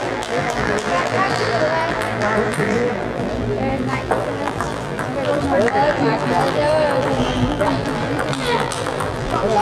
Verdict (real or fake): fake